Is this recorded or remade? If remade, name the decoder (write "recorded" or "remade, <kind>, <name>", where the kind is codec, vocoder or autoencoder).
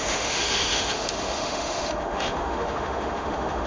remade, autoencoder, DAC-VAE